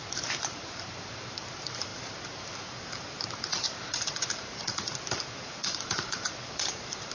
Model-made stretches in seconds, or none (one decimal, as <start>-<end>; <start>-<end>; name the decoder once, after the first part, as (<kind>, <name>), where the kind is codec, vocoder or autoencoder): 0.0-7.1 (vocoder, BigVGAN v2)